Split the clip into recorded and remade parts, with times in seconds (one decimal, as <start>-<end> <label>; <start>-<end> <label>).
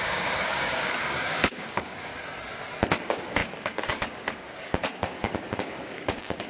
0.0-2.1 remade; 2.1-2.9 recorded; 2.9-6.5 remade